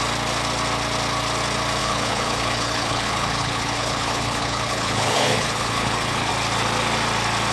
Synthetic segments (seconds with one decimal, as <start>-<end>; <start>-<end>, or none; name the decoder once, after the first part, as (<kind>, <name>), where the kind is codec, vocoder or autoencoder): 1.8-6.3 (codec, HILCodec)